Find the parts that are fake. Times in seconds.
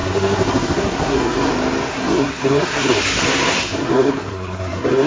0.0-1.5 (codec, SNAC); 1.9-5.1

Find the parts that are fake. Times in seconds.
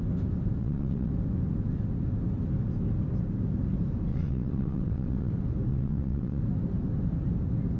0.6-1.1 (vocoder, WaveNeXt); 4.1-5.3; 5.7-6.4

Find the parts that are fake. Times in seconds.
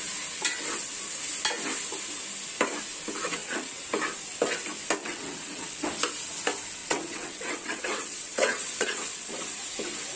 3.4-3.9 (vocoder, WaveNeXt); 5.0-5.9; 6.8-9.3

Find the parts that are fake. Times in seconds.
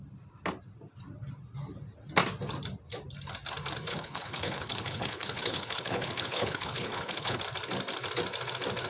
3.9-7.4 (codec, HILCodec)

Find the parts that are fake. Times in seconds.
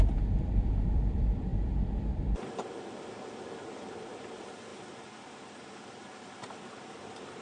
0.0-4.7 (vocoder, BigVGAN v2); 6.8-7.4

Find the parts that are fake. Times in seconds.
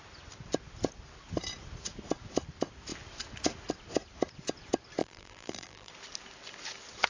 5.0-5.9 (vocoder, BigVGAN v2)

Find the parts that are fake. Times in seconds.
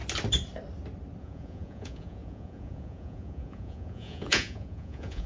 1.2-5.3 (vocoder, Vocos)